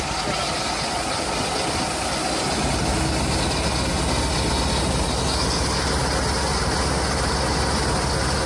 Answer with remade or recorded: recorded